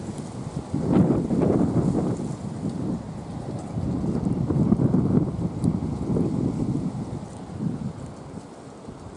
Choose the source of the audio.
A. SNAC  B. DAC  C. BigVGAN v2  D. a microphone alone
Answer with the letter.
D